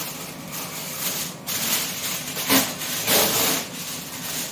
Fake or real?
real